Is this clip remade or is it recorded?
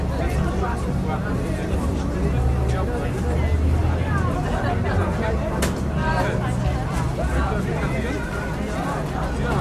recorded